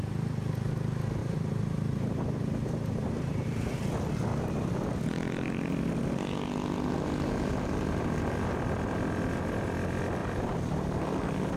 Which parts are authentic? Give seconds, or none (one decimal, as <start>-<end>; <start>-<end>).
0.0-1.2; 3.9-4.3; 4.9-10.2; 10.8-11.6